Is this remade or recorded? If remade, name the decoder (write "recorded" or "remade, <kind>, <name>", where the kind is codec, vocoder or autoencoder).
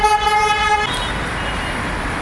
recorded